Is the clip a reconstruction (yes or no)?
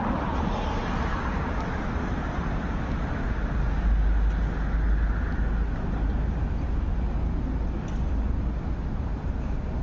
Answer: no